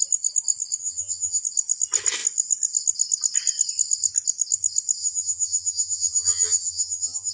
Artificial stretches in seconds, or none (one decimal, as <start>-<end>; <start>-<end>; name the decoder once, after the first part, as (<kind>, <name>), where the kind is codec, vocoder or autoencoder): 0.8-1.4 (vocoder, HiFi-GAN); 5.0-7.3